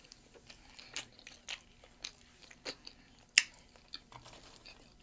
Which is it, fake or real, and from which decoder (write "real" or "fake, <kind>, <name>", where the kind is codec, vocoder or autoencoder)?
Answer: real